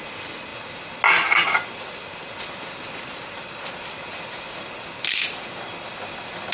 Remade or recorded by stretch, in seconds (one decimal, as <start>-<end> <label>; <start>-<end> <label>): 0.0-6.5 recorded

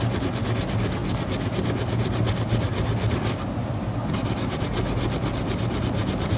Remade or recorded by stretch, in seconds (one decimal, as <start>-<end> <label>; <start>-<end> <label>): 0.0-6.4 recorded

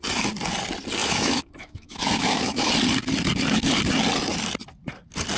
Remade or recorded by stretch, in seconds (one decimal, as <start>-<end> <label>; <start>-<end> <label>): 0.0-1.0 recorded; 1.0-2.7 remade; 2.7-5.4 recorded

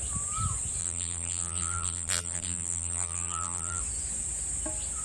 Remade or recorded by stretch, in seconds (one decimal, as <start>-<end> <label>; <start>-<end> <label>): 0.0-0.8 recorded; 0.8-3.8 remade; 3.8-5.0 recorded

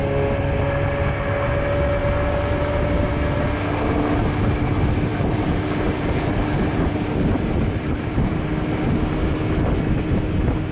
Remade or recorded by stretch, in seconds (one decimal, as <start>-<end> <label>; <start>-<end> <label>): 0.0-5.1 recorded; 5.1-8.4 remade; 8.4-10.7 recorded

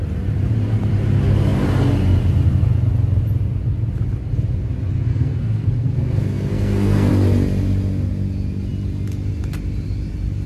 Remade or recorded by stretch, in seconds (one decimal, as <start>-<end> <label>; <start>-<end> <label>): 0.0-5.1 recorded; 5.1-7.1 remade; 7.1-10.5 recorded

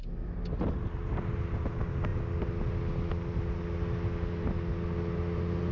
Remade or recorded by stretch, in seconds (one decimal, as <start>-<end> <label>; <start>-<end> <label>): 0.0-5.7 recorded

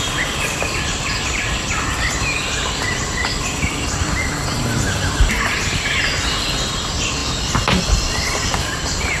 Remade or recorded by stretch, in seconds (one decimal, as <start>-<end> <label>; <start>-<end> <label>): 0.0-7.2 remade; 7.2-7.8 recorded; 7.8-9.2 remade